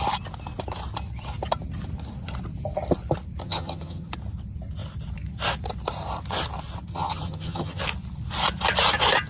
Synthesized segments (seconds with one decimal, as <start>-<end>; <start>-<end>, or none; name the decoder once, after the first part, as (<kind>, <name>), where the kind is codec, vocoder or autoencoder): 3.4-4.1 (vocoder, HiFi-GAN); 6.9-7.8